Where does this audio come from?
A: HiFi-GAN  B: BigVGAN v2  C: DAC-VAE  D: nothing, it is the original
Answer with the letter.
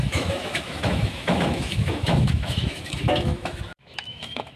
C